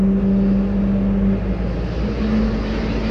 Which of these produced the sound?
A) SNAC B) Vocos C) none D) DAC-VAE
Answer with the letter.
C